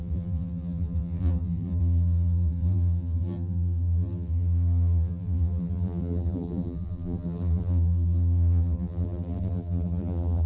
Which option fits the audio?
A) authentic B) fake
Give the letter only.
B